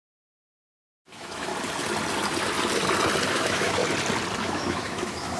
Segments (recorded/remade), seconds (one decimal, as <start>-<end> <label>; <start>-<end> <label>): 0.0-1.5 remade; 1.5-3.3 recorded; 3.3-3.8 remade; 3.8-4.4 recorded; 4.4-5.4 remade